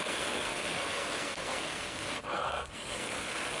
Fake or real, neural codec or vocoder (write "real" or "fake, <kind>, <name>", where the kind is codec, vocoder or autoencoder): fake, codec, SNAC